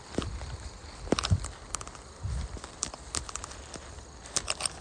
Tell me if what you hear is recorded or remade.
recorded